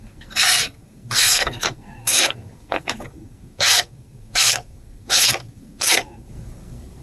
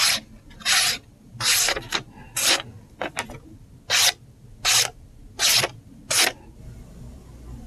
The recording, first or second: second